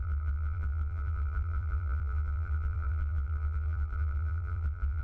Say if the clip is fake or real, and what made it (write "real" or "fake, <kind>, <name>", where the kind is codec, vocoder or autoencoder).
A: fake, vocoder, BigVGAN v2